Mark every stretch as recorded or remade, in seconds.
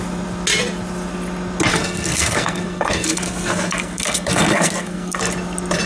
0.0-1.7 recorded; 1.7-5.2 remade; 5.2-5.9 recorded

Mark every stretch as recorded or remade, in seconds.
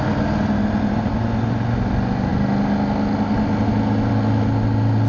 0.0-5.1 recorded